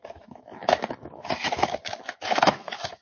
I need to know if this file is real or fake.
fake